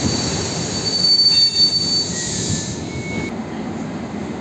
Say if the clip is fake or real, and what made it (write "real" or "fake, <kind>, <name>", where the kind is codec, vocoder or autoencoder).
real